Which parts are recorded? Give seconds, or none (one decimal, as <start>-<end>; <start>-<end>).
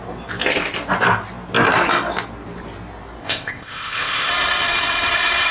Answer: 0.0-3.2; 4.3-5.5